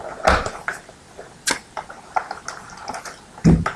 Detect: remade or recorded recorded